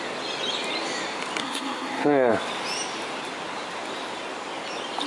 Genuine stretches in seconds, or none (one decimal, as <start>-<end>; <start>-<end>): 0.0-1.4; 2.3-5.1